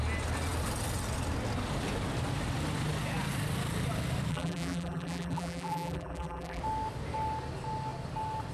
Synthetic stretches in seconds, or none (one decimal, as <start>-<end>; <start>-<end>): 4.3-6.6